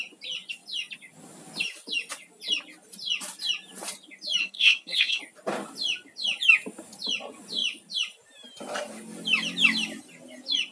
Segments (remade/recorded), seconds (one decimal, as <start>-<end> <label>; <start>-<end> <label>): 0.0-4.4 recorded; 4.4-5.2 remade; 5.2-10.7 recorded